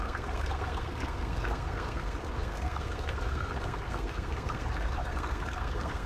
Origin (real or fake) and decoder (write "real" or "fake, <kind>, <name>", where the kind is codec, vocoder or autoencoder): fake, codec, SNAC